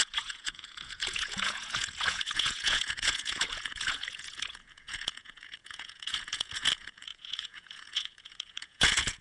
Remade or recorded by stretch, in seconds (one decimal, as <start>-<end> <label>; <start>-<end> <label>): 0.0-9.2 remade